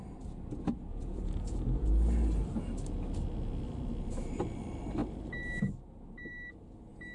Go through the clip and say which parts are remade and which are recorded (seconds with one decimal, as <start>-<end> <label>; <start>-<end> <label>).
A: 0.0-0.9 recorded; 0.9-1.9 remade; 1.9-7.1 recorded